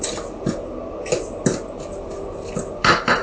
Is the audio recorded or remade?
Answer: recorded